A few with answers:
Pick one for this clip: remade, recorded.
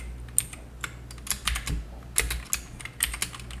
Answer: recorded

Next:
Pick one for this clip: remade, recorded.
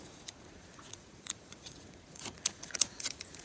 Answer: remade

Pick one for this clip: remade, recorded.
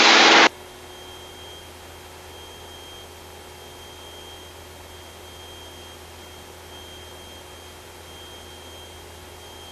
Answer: recorded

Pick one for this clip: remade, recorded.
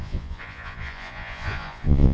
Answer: remade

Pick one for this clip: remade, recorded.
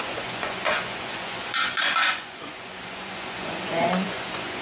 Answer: remade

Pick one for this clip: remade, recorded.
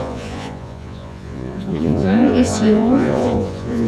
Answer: remade